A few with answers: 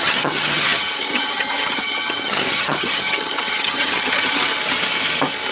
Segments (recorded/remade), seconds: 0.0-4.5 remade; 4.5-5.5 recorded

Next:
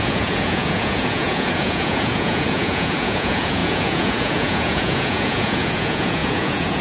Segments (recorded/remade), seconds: 0.0-6.8 remade